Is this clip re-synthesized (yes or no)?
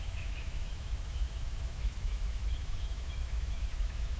yes